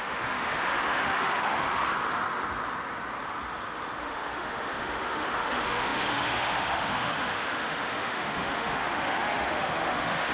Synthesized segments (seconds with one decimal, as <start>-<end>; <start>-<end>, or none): 0.0-1.8; 4.0-10.3